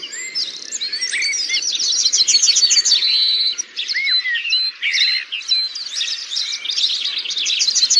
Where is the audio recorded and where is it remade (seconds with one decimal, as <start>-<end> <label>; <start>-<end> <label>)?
0.0-3.5 recorded; 3.5-4.5 remade; 4.5-8.0 recorded